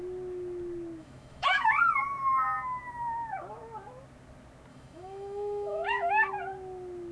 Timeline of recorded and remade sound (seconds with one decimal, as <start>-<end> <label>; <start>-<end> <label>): 0.0-1.0 recorded; 1.0-1.7 remade; 1.7-4.7 recorded; 4.7-6.3 remade; 6.3-7.1 recorded